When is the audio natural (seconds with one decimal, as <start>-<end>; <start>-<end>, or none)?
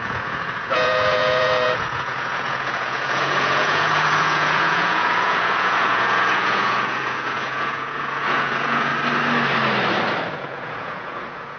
8.9-10.3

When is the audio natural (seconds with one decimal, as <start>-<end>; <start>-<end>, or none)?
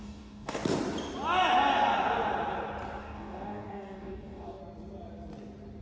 0.6-3.0; 4.6-5.8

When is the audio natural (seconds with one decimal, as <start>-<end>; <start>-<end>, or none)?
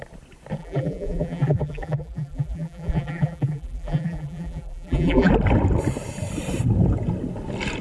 0.0-0.6; 5.3-7.8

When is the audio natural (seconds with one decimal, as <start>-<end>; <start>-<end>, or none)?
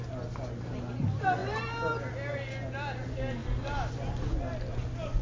0.0-5.2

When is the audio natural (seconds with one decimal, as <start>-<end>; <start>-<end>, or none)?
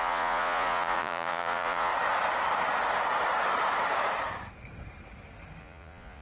1.9-5.6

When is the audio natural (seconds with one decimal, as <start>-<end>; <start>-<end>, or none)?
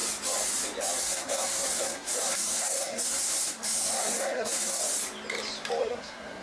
0.0-1.0; 4.8-5.8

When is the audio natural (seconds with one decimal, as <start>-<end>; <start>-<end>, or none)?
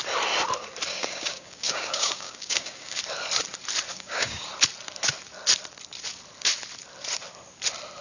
0.0-0.9; 3.0-3.9; 4.5-8.0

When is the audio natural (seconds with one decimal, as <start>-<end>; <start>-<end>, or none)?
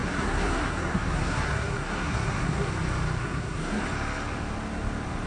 2.7-3.2; 3.8-5.3